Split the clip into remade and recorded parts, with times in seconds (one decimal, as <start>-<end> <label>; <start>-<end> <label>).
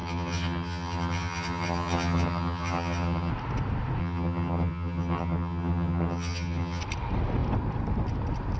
0.0-3.3 remade; 3.3-4.0 recorded; 4.0-6.8 remade; 6.8-8.6 recorded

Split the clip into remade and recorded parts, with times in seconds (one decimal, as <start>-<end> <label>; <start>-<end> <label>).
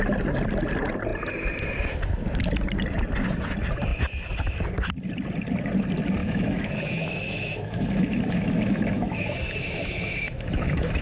0.0-6.2 recorded; 6.2-11.0 remade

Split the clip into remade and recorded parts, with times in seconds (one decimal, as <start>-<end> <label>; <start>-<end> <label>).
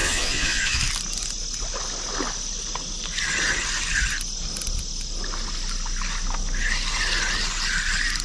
0.0-0.8 remade; 0.8-8.2 recorded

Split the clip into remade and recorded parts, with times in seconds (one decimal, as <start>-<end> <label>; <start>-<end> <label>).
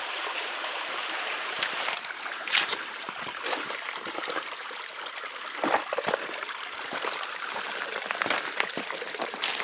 0.0-4.8 remade; 4.8-9.6 recorded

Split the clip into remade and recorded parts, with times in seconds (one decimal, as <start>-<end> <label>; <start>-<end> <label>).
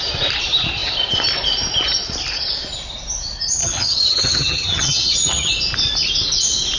0.0-3.6 recorded; 3.6-5.5 remade; 5.5-6.8 recorded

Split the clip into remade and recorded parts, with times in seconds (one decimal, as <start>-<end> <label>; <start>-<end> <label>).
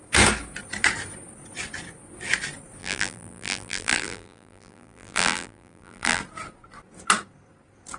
0.0-2.8 recorded; 2.8-6.2 remade; 6.2-8.0 recorded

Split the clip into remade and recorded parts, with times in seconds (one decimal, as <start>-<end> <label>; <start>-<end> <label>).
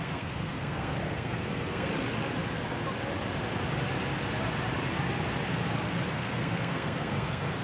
0.0-1.9 remade; 1.9-6.1 recorded; 6.1-7.6 remade